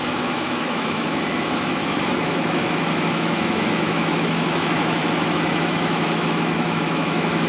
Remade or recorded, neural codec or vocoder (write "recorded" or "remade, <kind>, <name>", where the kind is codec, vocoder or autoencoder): remade, autoencoder, DAC-VAE